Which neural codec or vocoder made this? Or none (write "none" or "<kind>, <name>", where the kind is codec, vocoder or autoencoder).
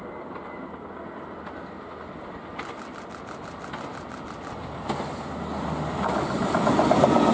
none